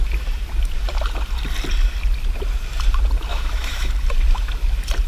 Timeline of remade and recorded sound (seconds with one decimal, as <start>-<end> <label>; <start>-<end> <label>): 0.0-3.3 recorded; 3.3-3.9 remade; 3.9-5.1 recorded